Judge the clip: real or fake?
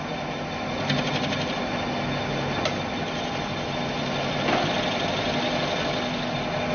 real